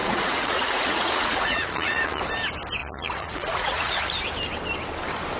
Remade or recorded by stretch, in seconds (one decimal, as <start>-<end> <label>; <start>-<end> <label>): 0.0-2.2 remade; 2.2-2.8 recorded; 2.8-4.0 remade; 4.0-5.4 recorded